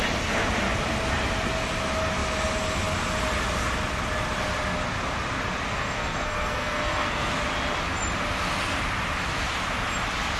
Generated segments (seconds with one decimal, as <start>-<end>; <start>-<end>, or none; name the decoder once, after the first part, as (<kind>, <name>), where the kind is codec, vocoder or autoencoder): 5.7-7.3 (codec, SNAC)